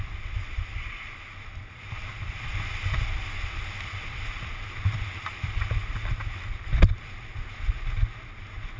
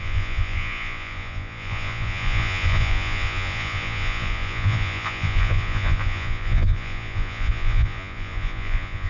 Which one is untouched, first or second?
first